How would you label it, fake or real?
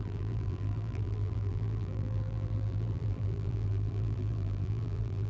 fake